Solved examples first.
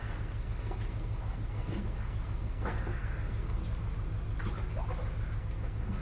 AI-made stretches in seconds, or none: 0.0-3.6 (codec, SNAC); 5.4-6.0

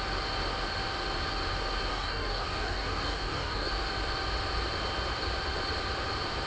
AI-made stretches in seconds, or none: 1.9-3.7 (codec, DAC)

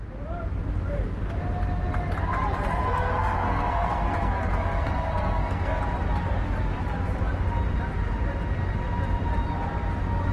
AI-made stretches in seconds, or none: 2.8-5.8 (codec, SNAC)

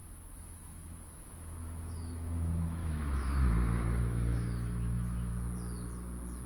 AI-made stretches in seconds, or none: 0.0-5.3 (autoencoder, DAC-VAE)

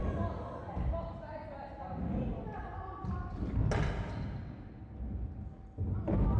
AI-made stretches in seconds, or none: none

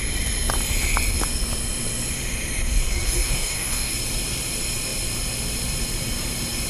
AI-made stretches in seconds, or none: 2.8-3.9 (codec, DAC)

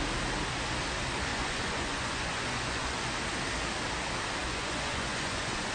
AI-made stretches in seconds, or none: 1.3-3.2 (vocoder, Vocos); 4.4-5.7